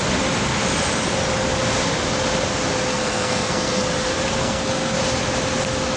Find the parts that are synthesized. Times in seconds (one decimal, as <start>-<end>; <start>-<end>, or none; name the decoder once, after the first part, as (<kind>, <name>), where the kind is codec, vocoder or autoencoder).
2.9-3.8 (codec, SNAC); 4.4-5.0